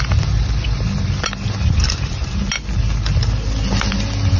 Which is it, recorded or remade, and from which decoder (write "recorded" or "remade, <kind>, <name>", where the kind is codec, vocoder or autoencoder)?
recorded